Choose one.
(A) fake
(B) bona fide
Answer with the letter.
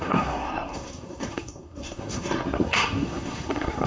A